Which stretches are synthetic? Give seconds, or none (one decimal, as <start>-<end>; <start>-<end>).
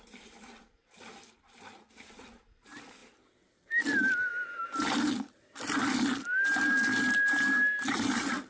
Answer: none